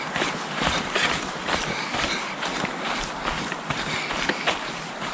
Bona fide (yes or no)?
no